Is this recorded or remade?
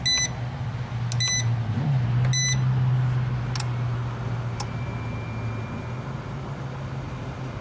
recorded